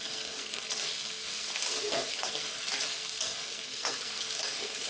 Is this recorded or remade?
remade